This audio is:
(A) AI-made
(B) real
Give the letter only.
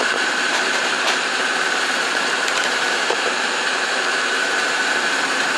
A